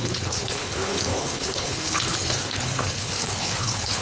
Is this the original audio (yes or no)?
no